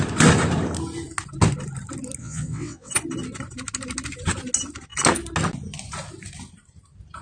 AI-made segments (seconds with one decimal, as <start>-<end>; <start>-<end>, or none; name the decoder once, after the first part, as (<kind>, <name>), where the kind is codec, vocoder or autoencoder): 2.2-2.9 (vocoder, WaveNeXt)